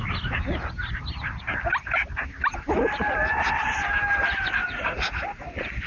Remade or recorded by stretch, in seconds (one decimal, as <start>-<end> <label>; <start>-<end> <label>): 0.0-4.6 recorded; 4.6-5.5 remade; 5.5-5.9 recorded